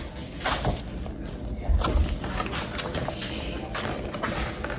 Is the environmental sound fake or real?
real